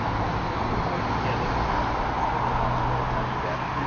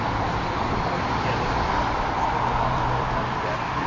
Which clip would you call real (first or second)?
first